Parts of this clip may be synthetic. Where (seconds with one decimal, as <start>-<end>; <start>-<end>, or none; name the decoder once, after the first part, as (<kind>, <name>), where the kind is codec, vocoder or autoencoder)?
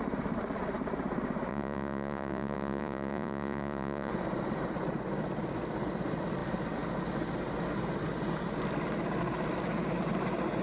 1.5-4.1 (vocoder, Vocos)